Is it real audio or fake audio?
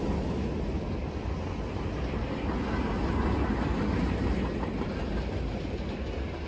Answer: real